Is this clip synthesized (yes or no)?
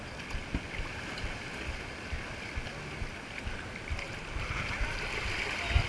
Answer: no